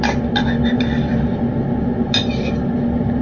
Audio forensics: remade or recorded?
recorded